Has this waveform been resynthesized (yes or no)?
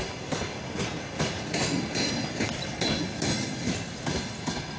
no